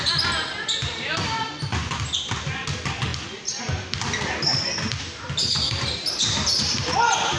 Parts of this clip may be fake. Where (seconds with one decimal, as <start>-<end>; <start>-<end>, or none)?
none